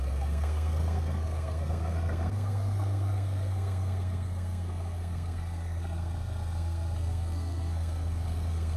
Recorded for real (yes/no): no